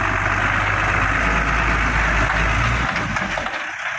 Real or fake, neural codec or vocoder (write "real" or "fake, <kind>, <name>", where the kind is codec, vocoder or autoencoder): real